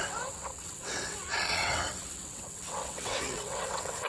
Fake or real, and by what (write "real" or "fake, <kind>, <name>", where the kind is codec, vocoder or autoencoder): fake, vocoder, WaveNeXt